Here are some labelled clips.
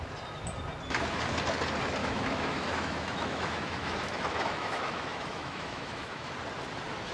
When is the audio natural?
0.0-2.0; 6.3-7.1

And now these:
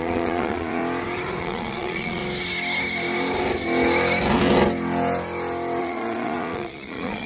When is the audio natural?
0.8-1.4; 2.2-5.8

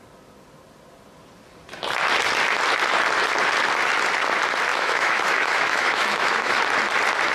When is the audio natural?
0.0-4.7; 6.6-7.3

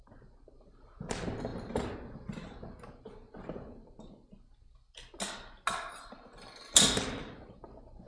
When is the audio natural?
0.0-8.1

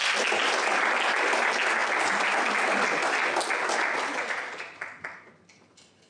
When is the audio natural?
0.0-6.1